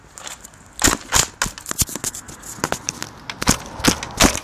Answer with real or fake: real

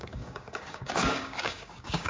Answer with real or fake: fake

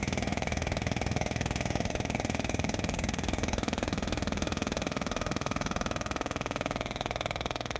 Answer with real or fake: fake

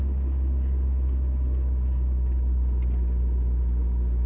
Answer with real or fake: real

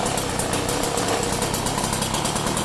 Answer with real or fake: real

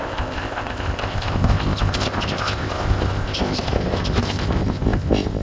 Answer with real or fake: fake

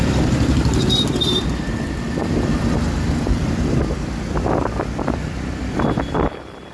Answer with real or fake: fake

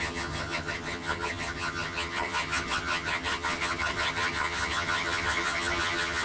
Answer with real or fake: fake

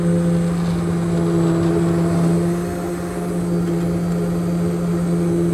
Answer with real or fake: real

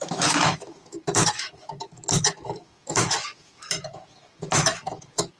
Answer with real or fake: fake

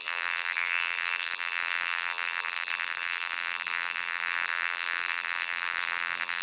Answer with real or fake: fake